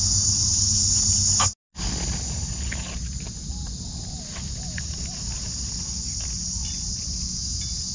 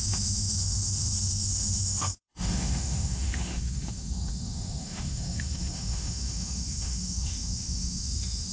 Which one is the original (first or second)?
first